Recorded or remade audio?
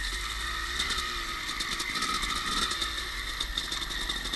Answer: recorded